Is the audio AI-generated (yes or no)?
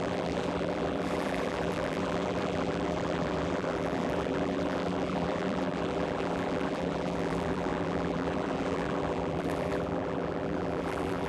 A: yes